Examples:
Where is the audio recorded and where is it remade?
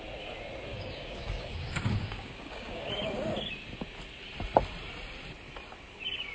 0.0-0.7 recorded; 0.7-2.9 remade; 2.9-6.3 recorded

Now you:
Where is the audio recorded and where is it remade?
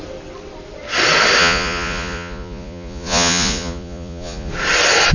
0.0-1.4 recorded; 1.4-4.5 remade; 4.5-5.1 recorded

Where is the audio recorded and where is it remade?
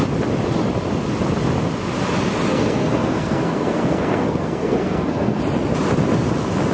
0.0-2.5 recorded; 2.5-5.4 remade; 5.4-6.7 recorded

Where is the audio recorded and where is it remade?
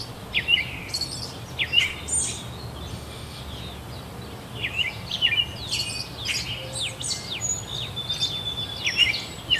0.0-2.9 recorded; 2.9-3.4 remade; 3.4-9.6 recorded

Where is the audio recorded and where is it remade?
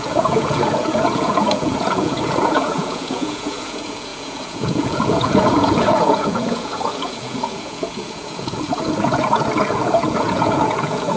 0.0-11.2 remade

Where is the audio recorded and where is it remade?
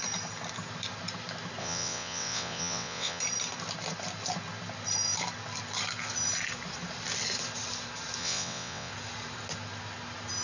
0.0-1.6 recorded; 1.6-3.2 remade; 3.2-8.2 recorded; 8.2-8.9 remade; 8.9-10.4 recorded